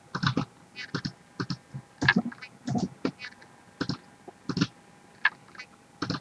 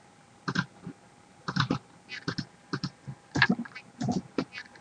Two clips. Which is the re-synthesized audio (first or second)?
second